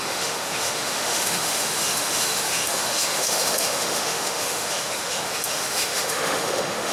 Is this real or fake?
fake